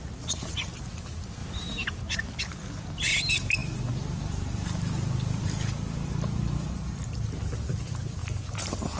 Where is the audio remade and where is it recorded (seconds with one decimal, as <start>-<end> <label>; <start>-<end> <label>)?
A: 0.0-3.6 recorded; 3.6-7.3 remade; 7.3-9.0 recorded